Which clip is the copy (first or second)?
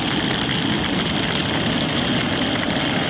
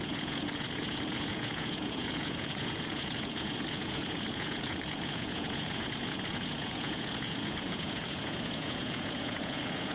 second